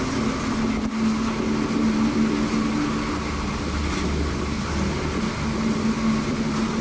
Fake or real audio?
real